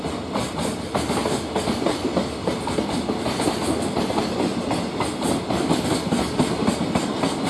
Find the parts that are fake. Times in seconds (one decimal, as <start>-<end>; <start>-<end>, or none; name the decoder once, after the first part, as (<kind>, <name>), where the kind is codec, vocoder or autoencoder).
none